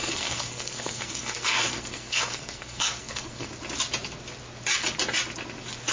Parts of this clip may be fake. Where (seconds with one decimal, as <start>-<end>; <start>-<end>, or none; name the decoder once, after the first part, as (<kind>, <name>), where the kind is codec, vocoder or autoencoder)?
0.0-3.5 (codec, SNAC)